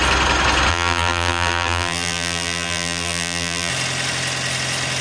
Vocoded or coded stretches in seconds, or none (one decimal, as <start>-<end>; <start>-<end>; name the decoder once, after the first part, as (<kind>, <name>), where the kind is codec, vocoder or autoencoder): 0.7-3.7 (vocoder, BigVGAN v2)